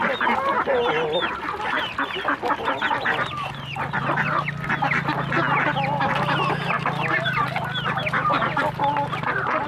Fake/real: real